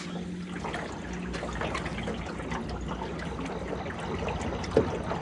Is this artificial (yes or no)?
no